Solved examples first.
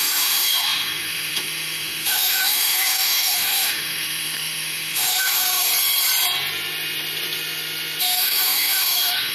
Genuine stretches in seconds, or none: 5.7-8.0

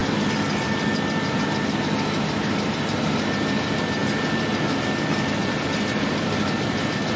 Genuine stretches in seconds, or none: 0.0-7.2

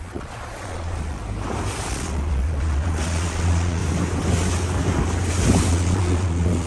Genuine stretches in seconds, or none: 1.2-1.9; 3.8-5.7

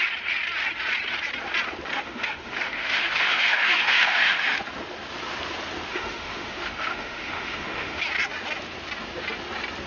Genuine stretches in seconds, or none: 0.0-1.9; 4.6-5.9; 8.0-9.9

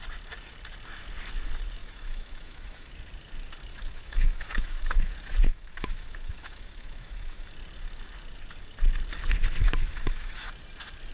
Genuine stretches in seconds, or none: 0.0-1.8; 2.9-3.7; 5.1-5.5; 7.5-9.6; 10.5-11.1

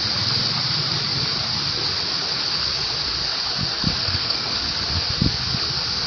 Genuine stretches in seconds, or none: 0.0-4.0; 4.5-6.1

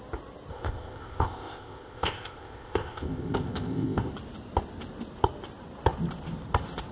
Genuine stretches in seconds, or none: 0.0-0.5; 4.1-6.9